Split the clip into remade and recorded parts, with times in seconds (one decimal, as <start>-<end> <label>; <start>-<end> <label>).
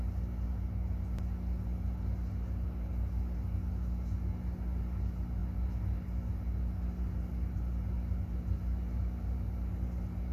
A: 0.0-10.3 recorded